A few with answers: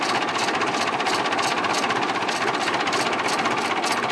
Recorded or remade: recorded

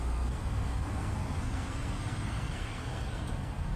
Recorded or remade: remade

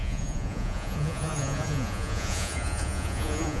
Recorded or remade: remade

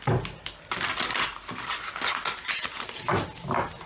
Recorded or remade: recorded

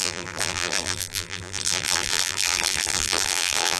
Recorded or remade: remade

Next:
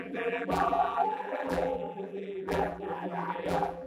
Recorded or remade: remade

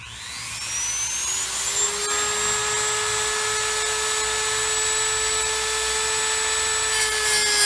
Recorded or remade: recorded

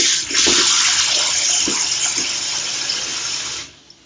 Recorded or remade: recorded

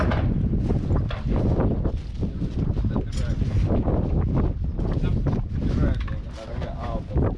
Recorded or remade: recorded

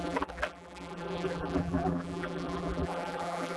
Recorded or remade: remade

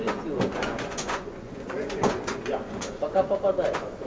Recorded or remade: remade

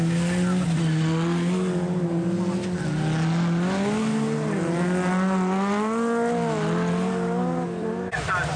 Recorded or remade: recorded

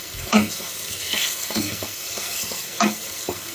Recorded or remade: remade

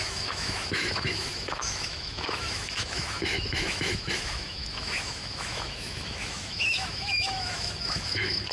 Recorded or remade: remade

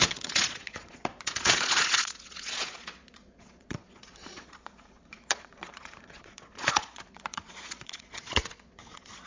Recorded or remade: remade